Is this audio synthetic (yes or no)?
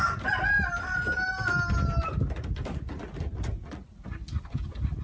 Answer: no